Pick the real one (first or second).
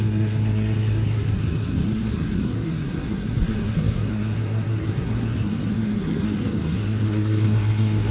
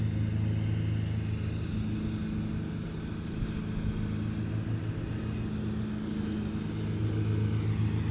second